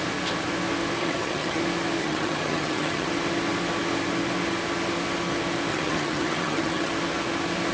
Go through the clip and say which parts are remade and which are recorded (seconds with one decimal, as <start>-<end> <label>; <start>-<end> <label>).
0.0-1.0 recorded; 1.0-1.6 remade; 1.6-2.0 recorded; 2.0-3.1 remade; 3.1-5.7 recorded; 5.7-6.9 remade; 6.9-7.7 recorded